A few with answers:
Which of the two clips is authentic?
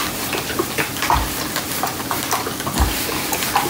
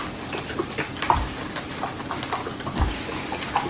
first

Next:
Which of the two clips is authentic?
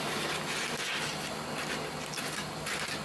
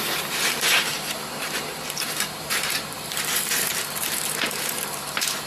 first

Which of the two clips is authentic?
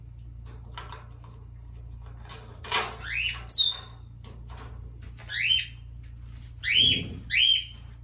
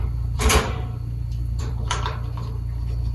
first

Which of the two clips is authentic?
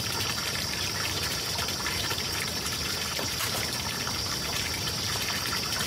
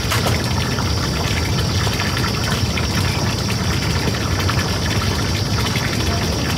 second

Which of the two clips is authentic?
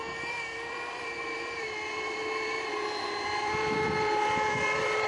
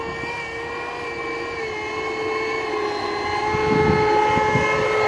second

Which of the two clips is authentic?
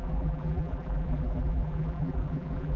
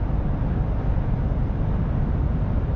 second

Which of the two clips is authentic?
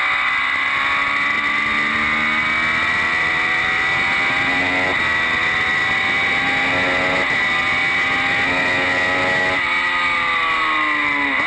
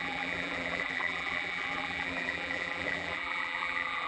first